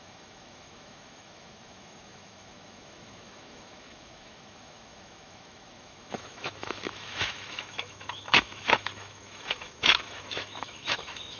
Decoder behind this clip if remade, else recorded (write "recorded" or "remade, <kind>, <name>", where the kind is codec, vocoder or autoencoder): remade, autoencoder, DAC-VAE